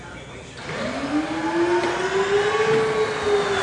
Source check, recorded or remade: recorded